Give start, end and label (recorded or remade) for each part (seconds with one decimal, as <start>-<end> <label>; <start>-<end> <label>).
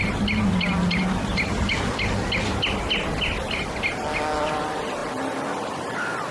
0.0-6.3 recorded